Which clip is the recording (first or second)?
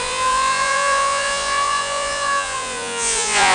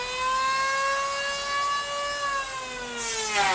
second